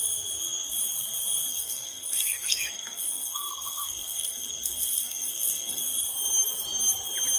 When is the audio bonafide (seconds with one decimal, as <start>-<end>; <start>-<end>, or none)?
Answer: 0.0-1.5; 5.8-7.4